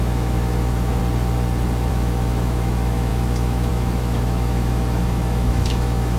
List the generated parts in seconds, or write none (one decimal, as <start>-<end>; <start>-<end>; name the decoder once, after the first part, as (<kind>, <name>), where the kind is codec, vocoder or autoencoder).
0.0-1.0 (autoencoder, DAC-VAE); 1.9-6.2